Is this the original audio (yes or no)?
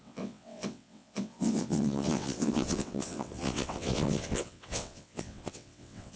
no